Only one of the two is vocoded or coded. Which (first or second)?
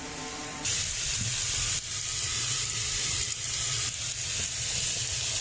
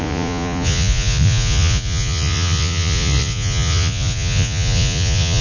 second